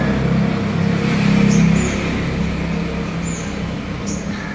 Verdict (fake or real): real